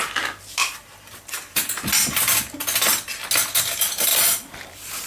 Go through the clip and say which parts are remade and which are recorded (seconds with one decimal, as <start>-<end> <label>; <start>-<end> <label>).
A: 0.0-0.6 recorded; 0.6-1.7 remade; 1.7-4.1 recorded; 4.1-5.1 remade